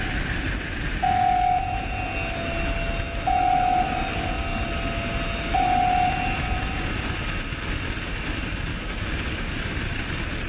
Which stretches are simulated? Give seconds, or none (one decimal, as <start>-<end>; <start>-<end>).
8.7-9.5